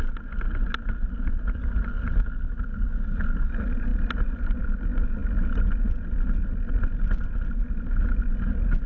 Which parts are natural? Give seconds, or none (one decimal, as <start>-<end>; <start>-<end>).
0.0-3.9; 4.6-8.9